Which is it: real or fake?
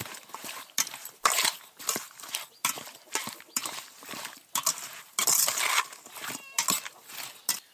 real